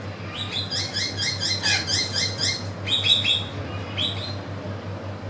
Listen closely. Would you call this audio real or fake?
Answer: real